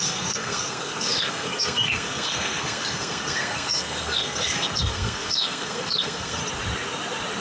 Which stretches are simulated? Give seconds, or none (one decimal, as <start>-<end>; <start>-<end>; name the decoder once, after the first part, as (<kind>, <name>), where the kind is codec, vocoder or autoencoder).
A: 0.0-6.4 (codec, SNAC)